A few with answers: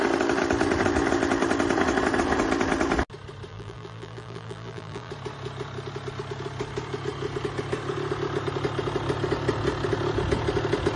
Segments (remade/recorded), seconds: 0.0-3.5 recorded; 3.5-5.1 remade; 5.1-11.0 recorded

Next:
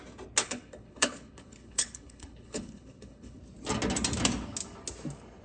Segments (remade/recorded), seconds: 0.0-0.4 recorded; 0.4-3.4 remade; 3.4-5.4 recorded

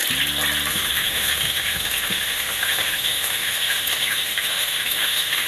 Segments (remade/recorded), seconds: 0.0-0.7 recorded; 0.7-5.5 remade

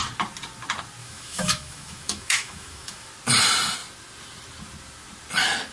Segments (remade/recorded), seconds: 0.0-1.0 recorded; 1.0-3.1 remade; 3.1-5.7 recorded

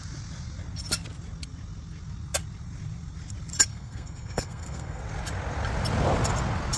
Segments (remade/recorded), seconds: 0.0-3.7 recorded; 3.7-5.0 remade; 5.0-6.8 recorded